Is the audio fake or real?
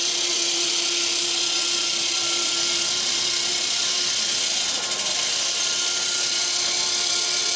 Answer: fake